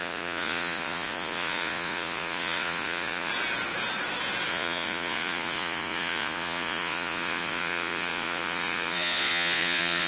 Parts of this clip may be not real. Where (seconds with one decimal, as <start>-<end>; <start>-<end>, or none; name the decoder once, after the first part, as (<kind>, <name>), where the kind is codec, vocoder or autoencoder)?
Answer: 0.0-3.3 (vocoder, Vocos); 4.5-10.1